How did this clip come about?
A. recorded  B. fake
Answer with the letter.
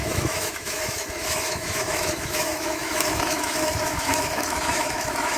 B